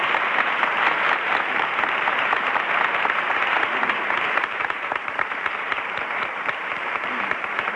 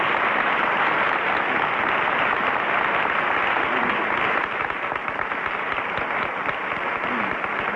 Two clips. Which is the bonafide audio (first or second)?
second